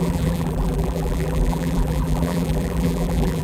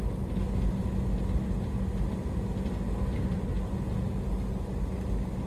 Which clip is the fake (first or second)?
first